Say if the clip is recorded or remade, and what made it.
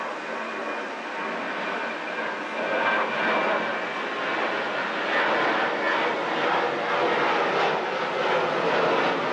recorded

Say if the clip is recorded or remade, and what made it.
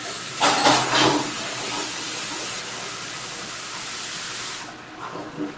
recorded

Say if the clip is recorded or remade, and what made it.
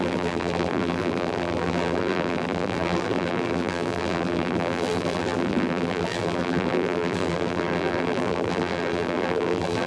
remade, vocoder, BigVGAN v2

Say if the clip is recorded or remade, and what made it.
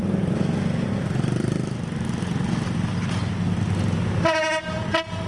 recorded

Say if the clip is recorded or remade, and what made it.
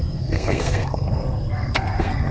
remade, codec, SNAC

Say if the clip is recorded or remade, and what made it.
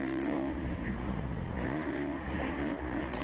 remade, vocoder, Vocos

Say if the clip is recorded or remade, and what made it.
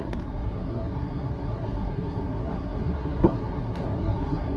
remade, codec, SNAC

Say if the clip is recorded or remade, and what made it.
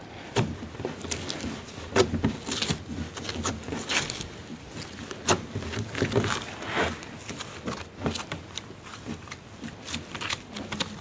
recorded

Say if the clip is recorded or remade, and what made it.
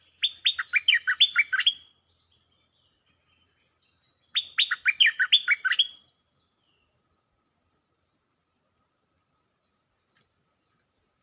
recorded